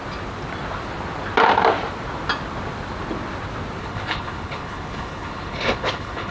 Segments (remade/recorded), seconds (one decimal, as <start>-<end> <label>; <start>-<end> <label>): 0.0-3.8 recorded; 3.8-6.3 remade

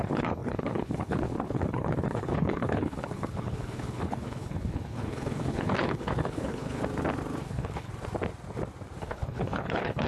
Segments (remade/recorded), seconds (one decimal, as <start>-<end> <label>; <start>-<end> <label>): 0.0-6.8 remade; 6.8-7.4 recorded; 7.4-7.9 remade; 7.9-9.0 recorded; 9.0-10.1 remade

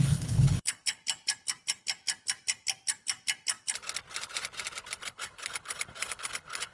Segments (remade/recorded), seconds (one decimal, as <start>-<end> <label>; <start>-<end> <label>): 0.0-1.0 remade; 1.0-5.0 recorded; 5.0-6.7 remade

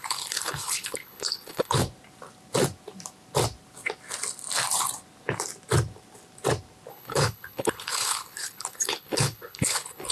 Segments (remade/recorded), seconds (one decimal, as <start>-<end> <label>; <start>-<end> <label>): 0.0-1.8 remade; 1.8-6.9 recorded; 6.9-10.1 remade

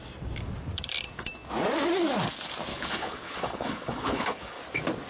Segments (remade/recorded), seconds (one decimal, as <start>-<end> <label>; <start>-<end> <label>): 0.0-2.7 recorded; 2.7-4.6 remade; 4.6-5.1 recorded

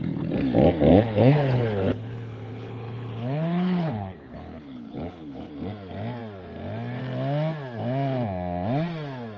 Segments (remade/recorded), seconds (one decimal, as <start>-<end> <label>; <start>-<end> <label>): 0.0-0.9 recorded; 0.9-5.5 remade; 5.5-9.4 recorded

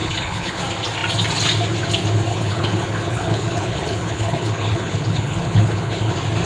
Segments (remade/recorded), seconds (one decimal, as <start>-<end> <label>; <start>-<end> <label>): 0.0-0.6 remade; 0.6-2.3 recorded; 2.3-6.1 remade; 6.1-6.5 recorded

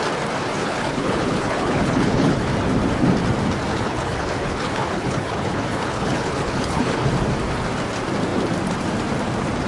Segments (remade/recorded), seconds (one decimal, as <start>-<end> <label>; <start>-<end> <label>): 0.0-0.6 recorded; 0.6-2.4 remade; 2.4-3.7 recorded; 3.7-7.1 remade; 7.1-9.7 recorded